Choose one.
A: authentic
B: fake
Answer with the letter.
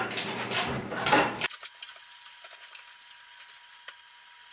A